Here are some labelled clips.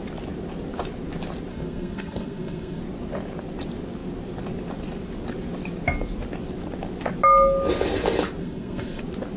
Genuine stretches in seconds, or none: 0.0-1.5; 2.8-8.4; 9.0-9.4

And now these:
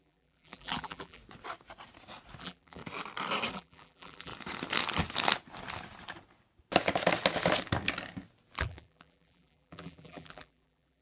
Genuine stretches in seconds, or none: 1.2-2.4; 2.8-3.5; 4.3-8.6

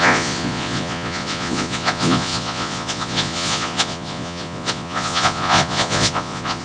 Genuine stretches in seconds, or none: none

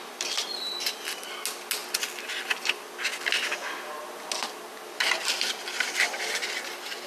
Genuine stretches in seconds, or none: 0.0-7.1